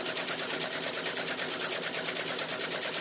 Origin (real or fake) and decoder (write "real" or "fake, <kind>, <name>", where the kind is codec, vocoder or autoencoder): real